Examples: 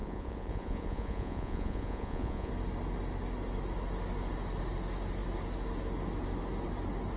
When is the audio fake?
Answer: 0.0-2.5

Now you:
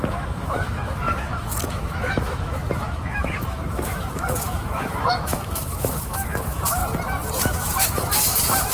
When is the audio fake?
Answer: 0.0-6.8; 7.4-8.7